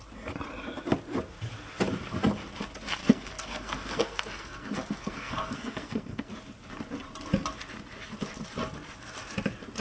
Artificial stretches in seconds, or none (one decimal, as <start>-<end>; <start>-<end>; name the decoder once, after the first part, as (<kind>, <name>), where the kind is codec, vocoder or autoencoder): 3.0-6.3 (codec, SNAC)